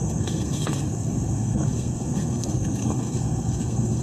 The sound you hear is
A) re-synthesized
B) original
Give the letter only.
A